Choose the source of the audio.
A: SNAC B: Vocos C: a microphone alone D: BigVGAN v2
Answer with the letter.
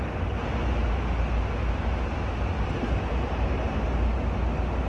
C